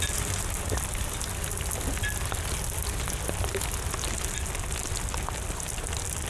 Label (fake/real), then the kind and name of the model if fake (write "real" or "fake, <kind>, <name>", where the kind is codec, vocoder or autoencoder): real